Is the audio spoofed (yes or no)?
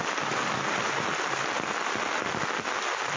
no